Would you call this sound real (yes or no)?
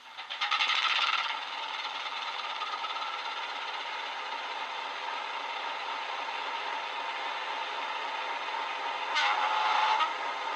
yes